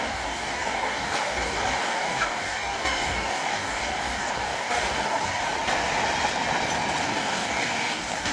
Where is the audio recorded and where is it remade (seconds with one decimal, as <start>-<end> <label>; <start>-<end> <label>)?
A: 0.0-5.4 remade; 5.4-7.0 recorded; 7.0-8.3 remade